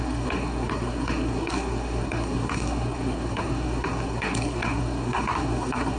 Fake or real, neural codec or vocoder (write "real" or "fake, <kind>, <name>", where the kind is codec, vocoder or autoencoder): fake, codec, SNAC